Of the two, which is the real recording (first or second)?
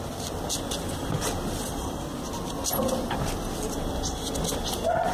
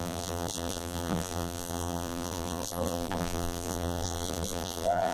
first